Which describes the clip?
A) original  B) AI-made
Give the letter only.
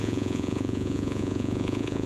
B